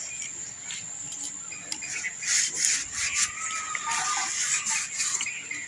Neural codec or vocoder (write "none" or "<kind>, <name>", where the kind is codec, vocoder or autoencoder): none